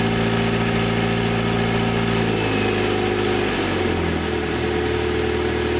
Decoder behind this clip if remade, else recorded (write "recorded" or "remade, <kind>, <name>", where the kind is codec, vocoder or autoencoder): recorded